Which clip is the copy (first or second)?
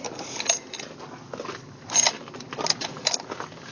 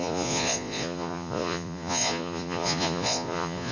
second